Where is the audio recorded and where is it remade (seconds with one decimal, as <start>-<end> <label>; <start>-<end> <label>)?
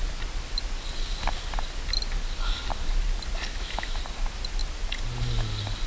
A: 0.0-3.5 recorded; 3.5-4.0 remade; 4.0-5.9 recorded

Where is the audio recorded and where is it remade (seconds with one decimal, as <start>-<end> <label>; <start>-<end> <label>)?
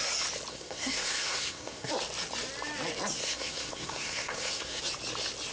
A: 0.0-0.5 recorded; 0.5-1.9 remade; 1.9-3.2 recorded; 3.2-4.8 remade; 4.8-5.5 recorded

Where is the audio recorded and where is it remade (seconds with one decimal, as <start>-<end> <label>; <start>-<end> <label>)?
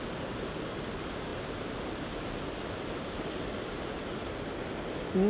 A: 0.0-5.3 recorded